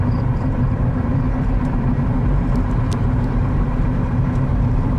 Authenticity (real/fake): fake